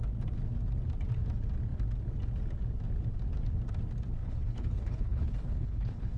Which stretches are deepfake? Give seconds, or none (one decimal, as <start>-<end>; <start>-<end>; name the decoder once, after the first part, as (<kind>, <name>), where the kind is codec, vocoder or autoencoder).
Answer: 4.2-6.2 (codec, HILCodec)